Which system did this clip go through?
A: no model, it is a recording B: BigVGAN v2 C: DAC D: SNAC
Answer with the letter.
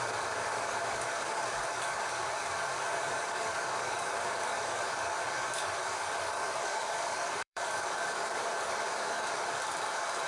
C